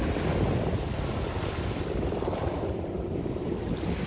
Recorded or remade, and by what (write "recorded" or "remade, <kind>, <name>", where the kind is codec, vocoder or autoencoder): recorded